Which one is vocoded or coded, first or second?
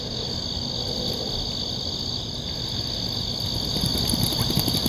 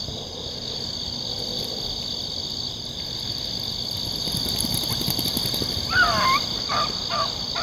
second